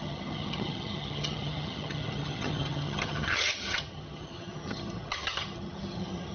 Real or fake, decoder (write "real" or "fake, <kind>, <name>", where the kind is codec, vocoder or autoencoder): fake, vocoder, HiFi-GAN